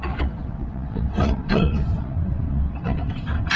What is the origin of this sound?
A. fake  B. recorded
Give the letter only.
A